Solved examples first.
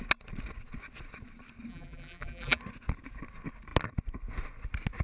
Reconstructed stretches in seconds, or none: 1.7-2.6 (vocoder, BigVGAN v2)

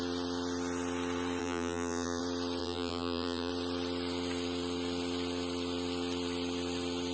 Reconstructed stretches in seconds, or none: 1.4-2.2 (vocoder, BigVGAN v2); 2.6-3.5